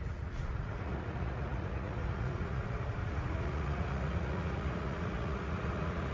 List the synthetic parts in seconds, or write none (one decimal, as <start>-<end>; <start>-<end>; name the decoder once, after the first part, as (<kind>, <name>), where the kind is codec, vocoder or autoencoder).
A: 0.0-6.1 (vocoder, Vocos)